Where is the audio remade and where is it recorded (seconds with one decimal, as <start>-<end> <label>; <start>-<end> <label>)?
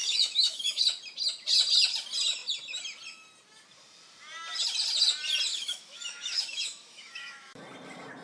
0.0-0.8 remade; 0.8-5.5 recorded; 5.5-7.6 remade; 7.6-8.2 recorded